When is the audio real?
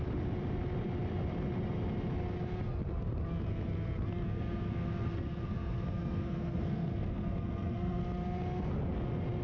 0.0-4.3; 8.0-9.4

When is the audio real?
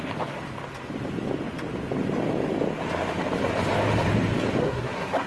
0.0-4.6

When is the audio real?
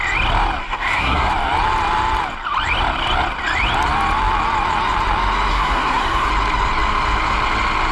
0.0-0.6; 1.3-5.5; 6.3-7.9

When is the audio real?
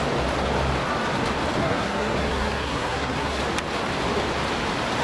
0.0-1.6; 3.4-5.0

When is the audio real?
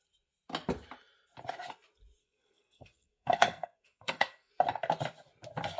0.0-2.2; 4.5-5.8